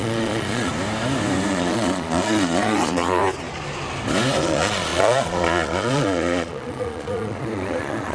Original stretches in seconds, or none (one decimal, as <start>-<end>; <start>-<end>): 0.7-1.5; 3.2-4.4